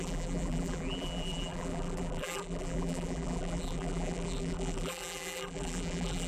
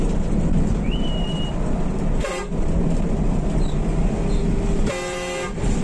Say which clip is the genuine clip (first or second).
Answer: second